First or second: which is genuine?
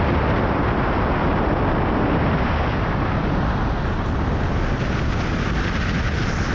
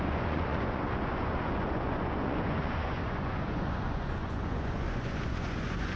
first